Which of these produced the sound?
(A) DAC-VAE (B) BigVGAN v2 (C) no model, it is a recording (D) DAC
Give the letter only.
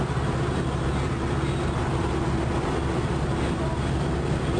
C